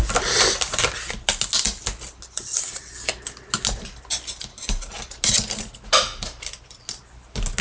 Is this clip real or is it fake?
real